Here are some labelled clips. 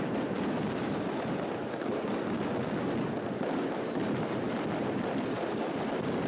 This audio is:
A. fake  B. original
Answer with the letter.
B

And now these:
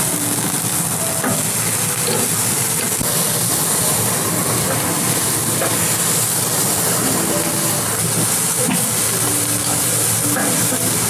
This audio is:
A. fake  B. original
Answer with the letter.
B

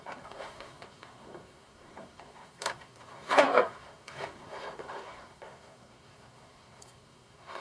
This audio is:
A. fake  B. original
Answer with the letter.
A